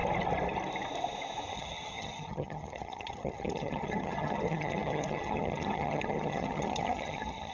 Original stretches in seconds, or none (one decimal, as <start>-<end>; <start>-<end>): 0.0-1.5